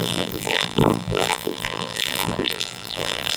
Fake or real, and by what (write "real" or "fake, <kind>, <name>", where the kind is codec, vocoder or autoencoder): fake, vocoder, BigVGAN v2